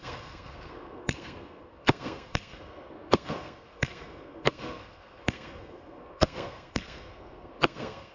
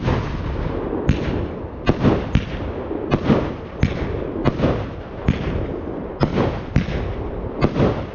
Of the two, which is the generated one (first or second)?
first